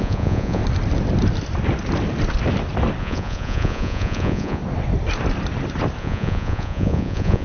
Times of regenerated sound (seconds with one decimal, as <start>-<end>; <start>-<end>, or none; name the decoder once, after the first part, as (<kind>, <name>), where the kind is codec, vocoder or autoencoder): 0.0-0.6 (vocoder, Vocos); 3.0-4.6; 6.0-7.4